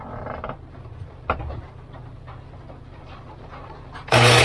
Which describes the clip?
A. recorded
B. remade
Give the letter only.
B